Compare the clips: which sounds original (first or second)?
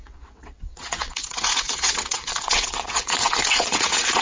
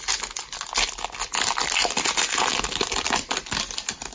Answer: second